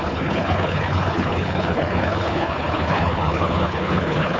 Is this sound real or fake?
fake